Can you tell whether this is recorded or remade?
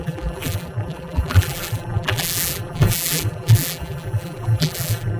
remade